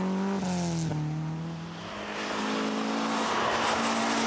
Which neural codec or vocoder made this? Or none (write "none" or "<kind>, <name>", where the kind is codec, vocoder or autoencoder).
none